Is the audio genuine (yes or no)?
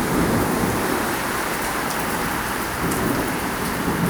no